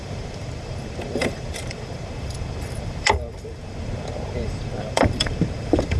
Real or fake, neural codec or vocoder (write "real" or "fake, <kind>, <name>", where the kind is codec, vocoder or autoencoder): fake, vocoder, BigVGAN v2